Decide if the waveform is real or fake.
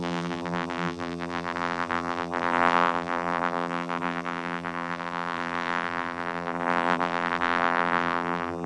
fake